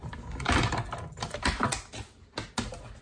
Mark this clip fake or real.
real